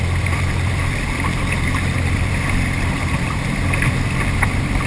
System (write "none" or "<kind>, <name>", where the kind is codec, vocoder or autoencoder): vocoder, BigVGAN v2